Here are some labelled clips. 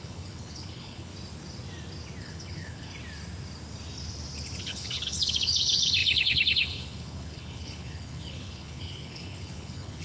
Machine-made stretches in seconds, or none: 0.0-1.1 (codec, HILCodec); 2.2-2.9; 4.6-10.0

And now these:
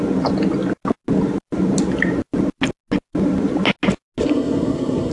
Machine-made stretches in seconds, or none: 4.2-5.1 (codec, SNAC)

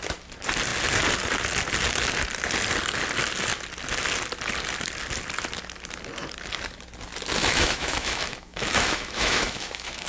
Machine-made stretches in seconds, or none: 7.4-10.1 (autoencoder, DAC-VAE)

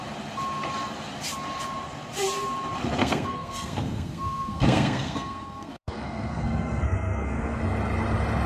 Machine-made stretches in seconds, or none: 3.0-7.6 (codec, SNAC)

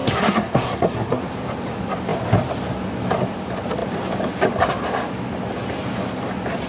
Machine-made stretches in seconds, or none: 0.0-1.2 (codec, SNAC)